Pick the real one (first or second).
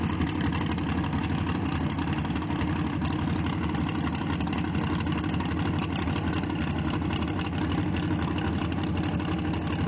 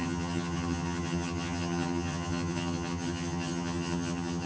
first